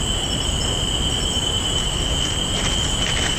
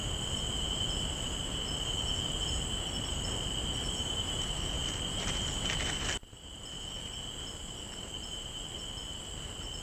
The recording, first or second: second